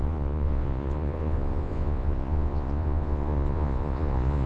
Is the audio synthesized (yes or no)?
yes